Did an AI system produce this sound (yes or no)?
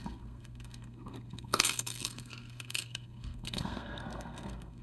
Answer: yes